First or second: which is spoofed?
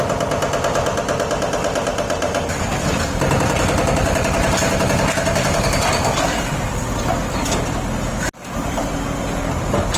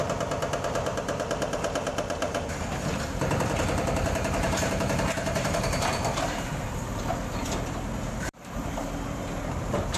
second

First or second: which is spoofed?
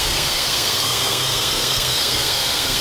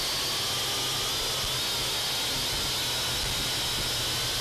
first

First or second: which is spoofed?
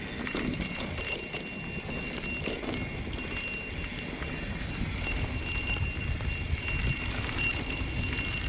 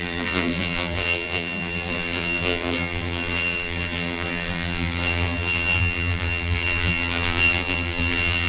second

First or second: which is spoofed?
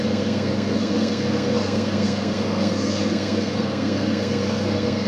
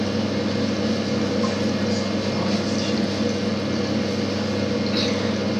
first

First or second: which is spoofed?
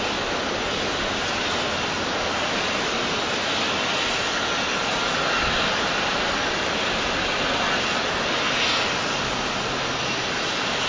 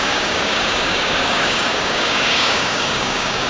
second